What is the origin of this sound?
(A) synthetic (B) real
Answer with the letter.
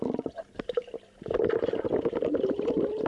B